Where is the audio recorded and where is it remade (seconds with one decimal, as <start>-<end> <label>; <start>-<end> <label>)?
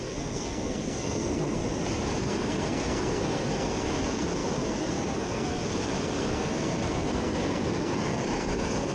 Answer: 0.0-1.6 remade; 1.6-2.2 recorded; 2.2-8.9 remade